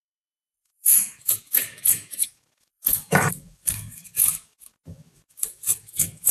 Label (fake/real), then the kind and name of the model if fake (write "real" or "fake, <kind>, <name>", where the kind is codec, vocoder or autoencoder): fake, autoencoder, DAC-VAE